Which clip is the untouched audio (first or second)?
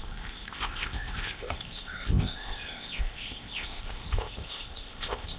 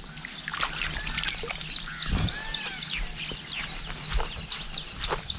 second